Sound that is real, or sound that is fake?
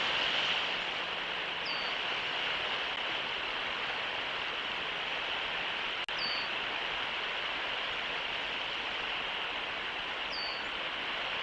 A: real